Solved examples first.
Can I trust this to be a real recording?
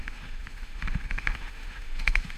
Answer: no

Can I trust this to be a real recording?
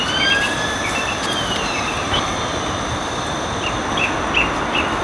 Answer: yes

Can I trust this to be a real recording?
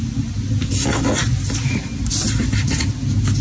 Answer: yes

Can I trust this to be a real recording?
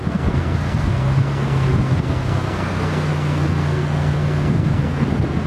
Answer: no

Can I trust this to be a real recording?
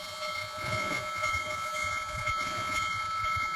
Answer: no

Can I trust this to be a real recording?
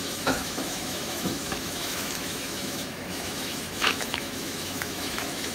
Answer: no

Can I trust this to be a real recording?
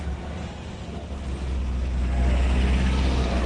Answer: yes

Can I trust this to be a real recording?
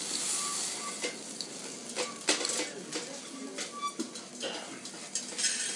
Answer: yes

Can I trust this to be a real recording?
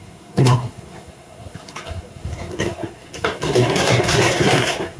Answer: no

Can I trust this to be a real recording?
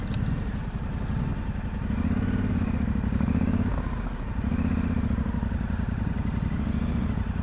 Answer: yes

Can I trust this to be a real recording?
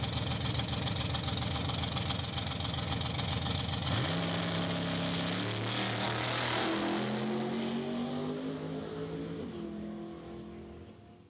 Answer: yes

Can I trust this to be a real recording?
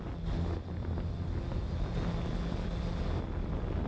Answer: yes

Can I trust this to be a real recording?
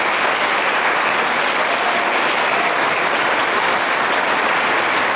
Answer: yes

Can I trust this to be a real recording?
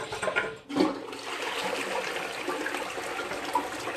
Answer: yes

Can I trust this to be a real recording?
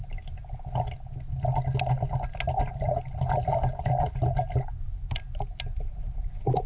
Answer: yes